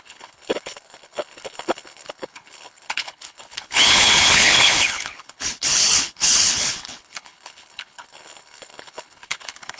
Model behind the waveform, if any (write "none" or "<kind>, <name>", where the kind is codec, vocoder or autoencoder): codec, HILCodec